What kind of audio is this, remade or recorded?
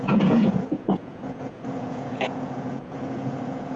remade